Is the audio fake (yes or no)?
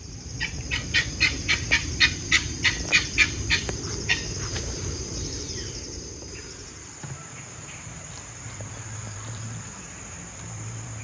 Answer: yes